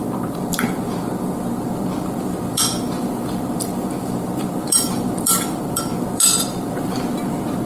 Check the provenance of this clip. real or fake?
fake